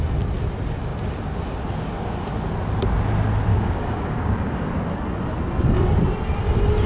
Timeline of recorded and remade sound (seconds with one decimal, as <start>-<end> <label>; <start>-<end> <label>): 0.0-3.5 recorded; 3.5-4.7 remade; 4.7-6.9 recorded